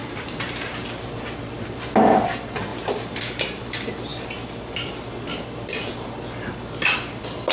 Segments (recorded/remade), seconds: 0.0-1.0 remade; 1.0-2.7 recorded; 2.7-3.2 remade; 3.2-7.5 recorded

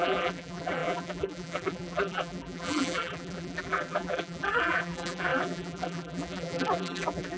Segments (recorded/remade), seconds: 0.0-7.4 remade

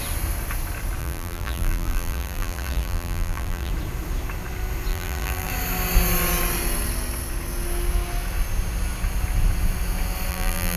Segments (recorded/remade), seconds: 0.0-1.0 recorded; 1.0-3.7 remade; 3.7-4.9 recorded; 4.9-5.5 remade; 5.5-10.3 recorded; 10.3-10.8 remade

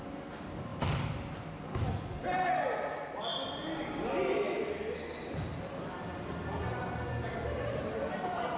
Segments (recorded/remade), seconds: 0.0-0.7 recorded; 0.7-1.8 remade; 1.8-8.6 recorded

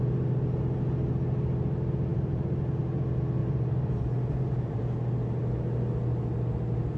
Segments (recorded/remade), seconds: 0.0-2.1 recorded; 2.1-2.8 remade; 2.8-3.4 recorded; 3.4-4.8 remade; 4.8-7.0 recorded

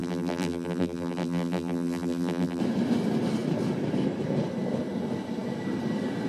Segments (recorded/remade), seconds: 0.0-2.6 remade; 2.6-6.3 recorded

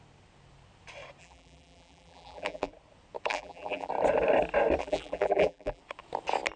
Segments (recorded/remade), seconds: 0.0-1.2 recorded; 1.2-2.7 remade; 2.7-3.3 recorded; 3.3-3.9 remade; 3.9-4.8 recorded; 4.8-5.8 remade; 5.8-6.6 recorded